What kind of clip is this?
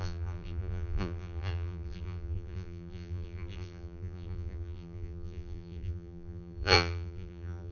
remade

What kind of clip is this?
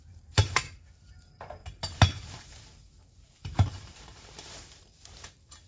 remade